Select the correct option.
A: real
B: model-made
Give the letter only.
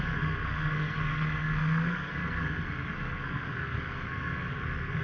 B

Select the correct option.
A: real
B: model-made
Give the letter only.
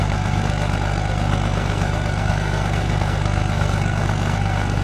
B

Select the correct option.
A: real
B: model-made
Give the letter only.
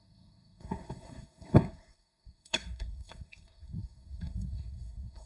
B